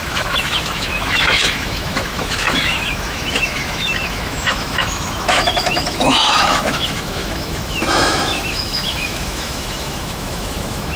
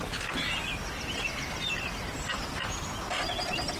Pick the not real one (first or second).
first